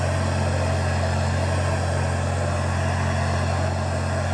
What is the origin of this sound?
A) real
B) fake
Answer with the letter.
A